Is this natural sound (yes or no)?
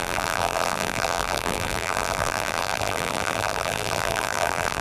no